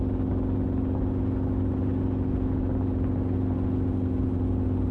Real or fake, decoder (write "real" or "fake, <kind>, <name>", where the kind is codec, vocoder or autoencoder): real